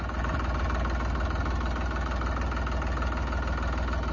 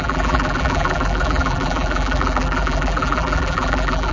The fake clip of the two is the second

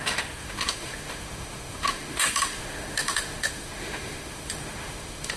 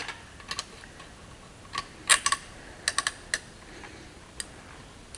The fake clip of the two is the first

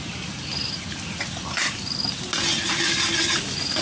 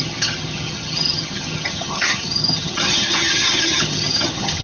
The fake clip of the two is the second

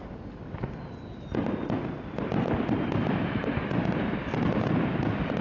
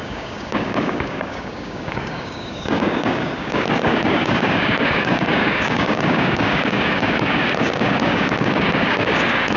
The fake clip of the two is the second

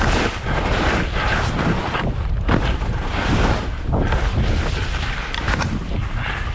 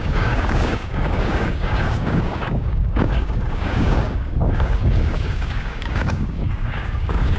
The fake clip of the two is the second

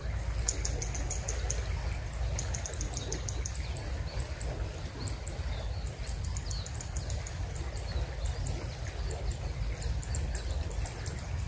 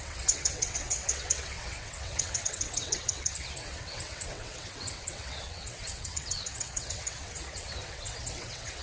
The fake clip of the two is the second